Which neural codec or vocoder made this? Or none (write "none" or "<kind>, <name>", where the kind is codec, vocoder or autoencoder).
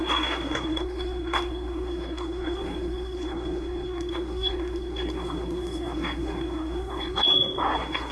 codec, SNAC